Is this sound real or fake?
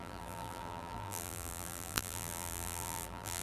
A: fake